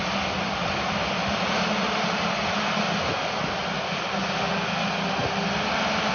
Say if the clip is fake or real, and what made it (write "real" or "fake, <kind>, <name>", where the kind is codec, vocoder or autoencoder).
real